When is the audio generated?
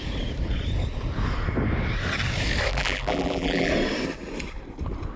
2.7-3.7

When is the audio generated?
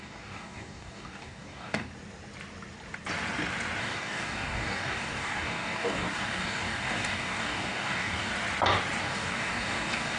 0.0-1.9; 3.8-8.3; 9.0-10.2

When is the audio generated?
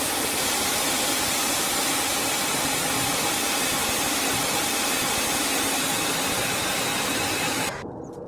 none